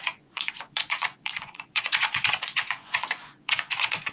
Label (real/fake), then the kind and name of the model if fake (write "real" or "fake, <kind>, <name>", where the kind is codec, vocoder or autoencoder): fake, vocoder, Vocos